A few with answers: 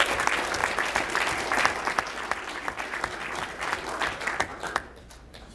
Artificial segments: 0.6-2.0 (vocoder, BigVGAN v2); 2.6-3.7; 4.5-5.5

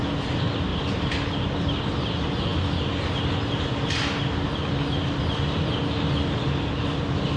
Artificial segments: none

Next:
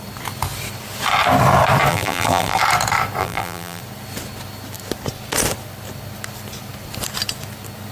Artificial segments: 1.9-2.6 (vocoder, BigVGAN v2); 3.2-3.8